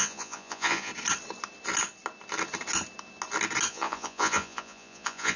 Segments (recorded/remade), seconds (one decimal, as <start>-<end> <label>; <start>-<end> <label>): 0.0-0.9 remade; 0.9-3.7 recorded; 3.7-5.4 remade